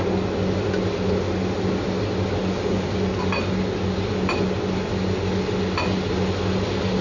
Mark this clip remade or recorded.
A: recorded